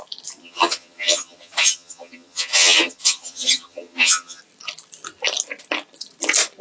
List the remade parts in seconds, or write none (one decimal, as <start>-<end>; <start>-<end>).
0.4-4.4